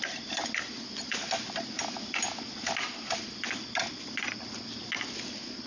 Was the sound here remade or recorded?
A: recorded